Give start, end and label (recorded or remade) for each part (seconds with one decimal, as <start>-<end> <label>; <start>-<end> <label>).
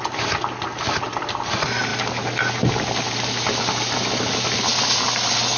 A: 0.0-5.6 recorded